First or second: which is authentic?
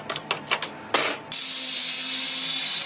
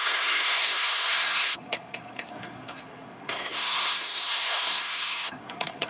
first